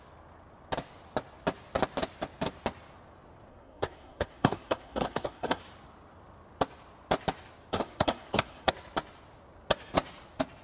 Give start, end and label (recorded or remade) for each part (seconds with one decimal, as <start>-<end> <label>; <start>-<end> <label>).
0.0-3.5 recorded; 3.5-5.6 remade; 5.6-7.7 recorded; 7.7-8.7 remade; 8.7-10.6 recorded